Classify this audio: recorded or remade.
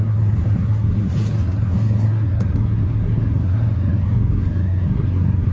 remade